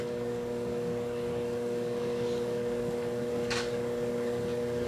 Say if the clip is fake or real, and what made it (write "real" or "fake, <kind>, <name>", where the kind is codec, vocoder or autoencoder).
fake, codec, DAC